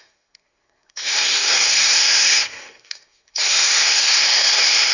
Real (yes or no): no